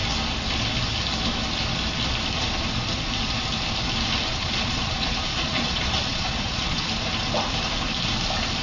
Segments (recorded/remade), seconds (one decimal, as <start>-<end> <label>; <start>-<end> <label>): 0.0-4.3 recorded; 4.3-6.8 remade; 6.8-8.6 recorded